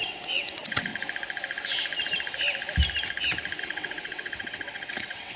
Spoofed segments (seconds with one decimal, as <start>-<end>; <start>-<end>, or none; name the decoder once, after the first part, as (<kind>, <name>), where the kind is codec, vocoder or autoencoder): 0.0-0.9 (vocoder, WaveNeXt); 3.6-5.4